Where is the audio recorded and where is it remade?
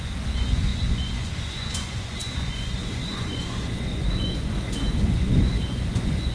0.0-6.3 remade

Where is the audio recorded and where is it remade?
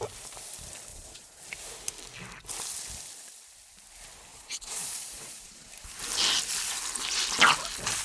0.0-0.9 recorded; 0.9-1.4 remade; 1.4-4.3 recorded; 4.3-5.7 remade; 5.7-8.0 recorded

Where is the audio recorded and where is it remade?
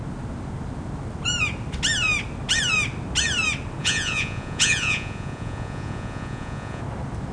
0.0-3.8 recorded; 3.8-6.8 remade; 6.8-7.3 recorded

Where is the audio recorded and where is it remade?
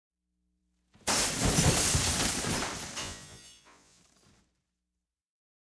0.0-3.0 recorded; 3.0-4.0 remade; 4.0-5.8 recorded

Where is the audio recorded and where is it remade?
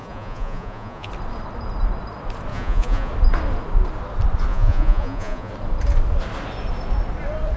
0.0-1.1 remade; 1.1-2.5 recorded; 2.5-3.1 remade; 3.1-4.5 recorded; 4.5-5.5 remade; 5.5-7.6 recorded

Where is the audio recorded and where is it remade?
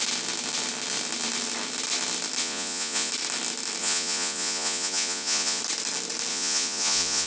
0.0-2.4 recorded; 2.4-3.1 remade; 3.1-3.8 recorded; 3.8-5.6 remade; 5.6-6.3 recorded; 6.3-7.3 remade